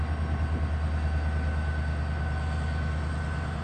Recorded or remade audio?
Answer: recorded